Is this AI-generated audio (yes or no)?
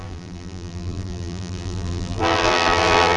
yes